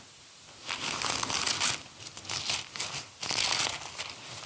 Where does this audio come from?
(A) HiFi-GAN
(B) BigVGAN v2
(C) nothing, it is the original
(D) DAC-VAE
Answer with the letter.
C